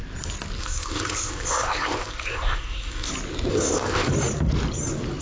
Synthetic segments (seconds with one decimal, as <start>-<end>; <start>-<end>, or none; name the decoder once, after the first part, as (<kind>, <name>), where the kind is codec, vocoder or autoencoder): 0.6-3.1 (codec, ZipCodec); 3.5-4.1